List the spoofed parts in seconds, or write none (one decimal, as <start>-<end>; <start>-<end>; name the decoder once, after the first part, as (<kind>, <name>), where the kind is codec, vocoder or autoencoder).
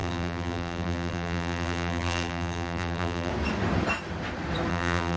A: 0.0-3.3 (vocoder, BigVGAN v2); 4.7-5.2